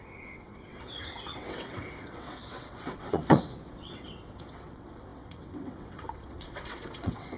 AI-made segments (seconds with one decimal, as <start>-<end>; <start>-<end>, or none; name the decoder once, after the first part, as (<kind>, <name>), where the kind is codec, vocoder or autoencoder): 0.0-7.4 (vocoder, WaveNeXt)